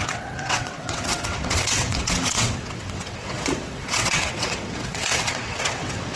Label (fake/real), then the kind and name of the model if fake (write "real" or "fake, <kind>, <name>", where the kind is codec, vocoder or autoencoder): fake, vocoder, WaveNeXt